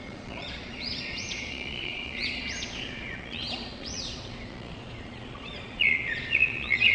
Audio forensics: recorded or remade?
remade